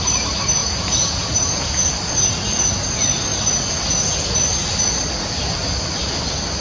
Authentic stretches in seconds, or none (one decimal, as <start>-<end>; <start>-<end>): 0.0-0.6; 1.9-6.6